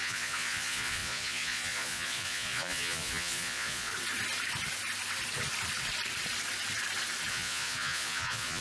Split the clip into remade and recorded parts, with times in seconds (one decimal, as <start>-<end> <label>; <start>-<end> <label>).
0.0-3.9 remade; 3.9-7.3 recorded; 7.3-8.6 remade